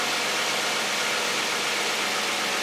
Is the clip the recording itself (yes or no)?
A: yes